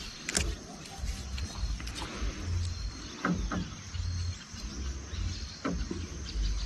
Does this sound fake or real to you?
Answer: real